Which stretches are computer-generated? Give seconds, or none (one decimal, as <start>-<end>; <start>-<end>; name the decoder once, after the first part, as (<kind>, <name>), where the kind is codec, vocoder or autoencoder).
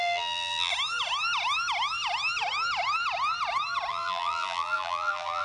0.0-0.7 (vocoder, BigVGAN v2); 3.9-5.4